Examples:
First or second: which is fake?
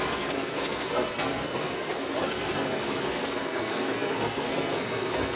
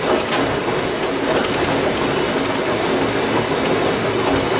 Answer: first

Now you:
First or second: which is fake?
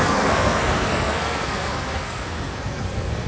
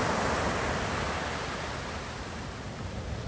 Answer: first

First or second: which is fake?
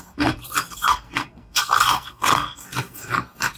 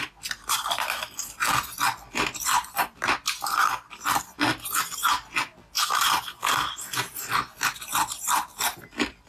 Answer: first